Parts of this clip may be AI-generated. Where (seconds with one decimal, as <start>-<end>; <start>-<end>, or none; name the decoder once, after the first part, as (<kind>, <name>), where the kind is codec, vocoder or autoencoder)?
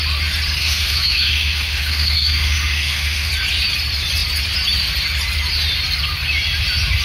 0.6-3.3 (autoencoder, DAC-VAE)